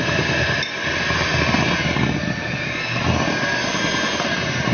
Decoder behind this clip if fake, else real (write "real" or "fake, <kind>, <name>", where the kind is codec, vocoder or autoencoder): real